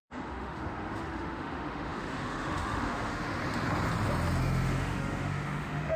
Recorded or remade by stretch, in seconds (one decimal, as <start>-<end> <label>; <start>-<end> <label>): 0.0-3.4 remade; 3.4-4.4 recorded; 4.4-6.0 remade